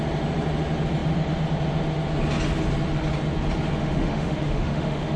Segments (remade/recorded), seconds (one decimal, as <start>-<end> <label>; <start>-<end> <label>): 0.0-3.8 recorded; 3.8-5.2 remade